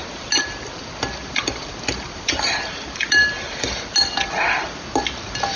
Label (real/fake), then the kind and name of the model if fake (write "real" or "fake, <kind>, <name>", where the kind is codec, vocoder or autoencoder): real